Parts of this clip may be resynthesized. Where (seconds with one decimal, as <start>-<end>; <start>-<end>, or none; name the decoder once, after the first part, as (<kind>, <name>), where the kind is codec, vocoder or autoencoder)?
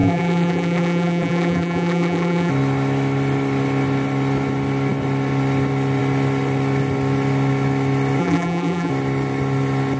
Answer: 0.0-2.5 (vocoder, BigVGAN v2); 8.2-8.9